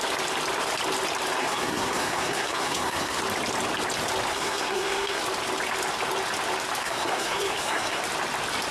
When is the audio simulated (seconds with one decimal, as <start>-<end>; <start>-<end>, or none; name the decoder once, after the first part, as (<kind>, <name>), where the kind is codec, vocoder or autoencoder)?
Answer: 1.4-3.2 (codec, SNAC); 4.3-5.2; 6.8-8.0